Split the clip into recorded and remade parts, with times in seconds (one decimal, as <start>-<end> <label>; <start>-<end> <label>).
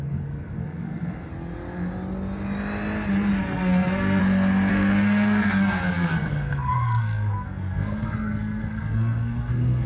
0.0-1.3 remade; 1.3-3.4 recorded; 3.4-4.2 remade; 4.2-4.7 recorded; 4.7-9.9 remade